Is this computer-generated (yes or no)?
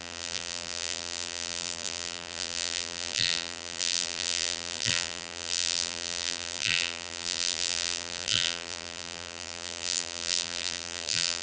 yes